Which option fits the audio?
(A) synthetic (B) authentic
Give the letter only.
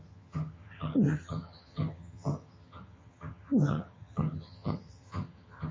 A